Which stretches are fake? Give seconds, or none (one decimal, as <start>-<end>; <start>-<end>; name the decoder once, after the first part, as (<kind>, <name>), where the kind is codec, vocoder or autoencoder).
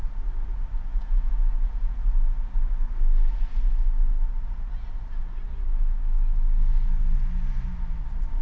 0.9-2.0 (vocoder, Vocos)